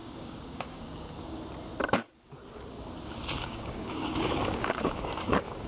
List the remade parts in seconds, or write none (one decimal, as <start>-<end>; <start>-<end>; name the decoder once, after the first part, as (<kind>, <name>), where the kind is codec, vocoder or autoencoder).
0.0-1.4 (codec, DAC); 3.4-5.7